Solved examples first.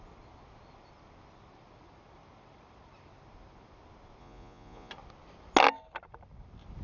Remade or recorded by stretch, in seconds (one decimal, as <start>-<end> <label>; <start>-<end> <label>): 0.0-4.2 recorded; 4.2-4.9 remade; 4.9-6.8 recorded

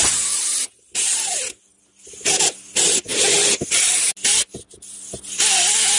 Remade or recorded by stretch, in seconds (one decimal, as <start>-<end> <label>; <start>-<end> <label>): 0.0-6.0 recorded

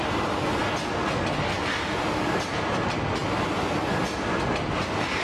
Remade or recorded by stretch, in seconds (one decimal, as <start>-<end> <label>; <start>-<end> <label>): 0.0-5.2 recorded

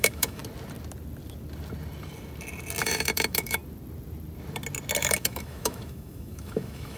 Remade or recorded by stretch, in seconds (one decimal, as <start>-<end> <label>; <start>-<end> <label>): 0.0-0.4 remade; 0.4-2.8 recorded; 2.8-3.6 remade; 3.6-5.0 recorded; 5.0-7.0 remade

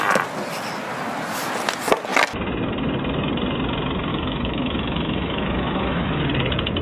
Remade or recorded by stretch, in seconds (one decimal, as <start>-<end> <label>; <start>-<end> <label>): 0.0-4.1 recorded; 4.1-6.2 remade; 6.2-6.8 recorded

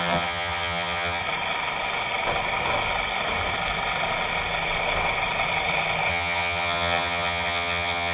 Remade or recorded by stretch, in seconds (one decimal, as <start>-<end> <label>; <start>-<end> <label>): 0.0-1.2 remade; 1.2-6.1 recorded; 6.1-8.1 remade